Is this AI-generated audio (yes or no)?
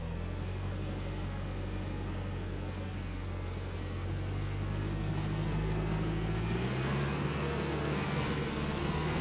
yes